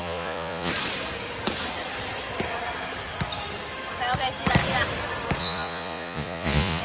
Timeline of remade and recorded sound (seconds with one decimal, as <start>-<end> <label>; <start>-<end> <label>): 0.0-0.7 remade; 0.7-5.4 recorded; 5.4-6.8 remade